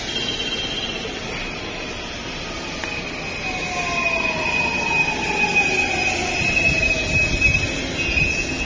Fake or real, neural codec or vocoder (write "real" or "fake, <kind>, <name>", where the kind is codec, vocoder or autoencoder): real